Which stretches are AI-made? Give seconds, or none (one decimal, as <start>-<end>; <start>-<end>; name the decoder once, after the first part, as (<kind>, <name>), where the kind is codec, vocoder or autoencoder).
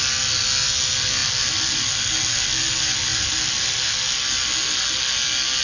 none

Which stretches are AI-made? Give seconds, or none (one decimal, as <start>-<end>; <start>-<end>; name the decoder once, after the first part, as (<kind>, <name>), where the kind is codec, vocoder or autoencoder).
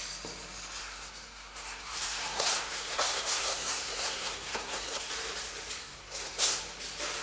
0.8-5.1 (codec, SNAC); 5.8-6.6